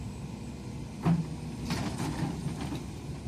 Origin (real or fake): real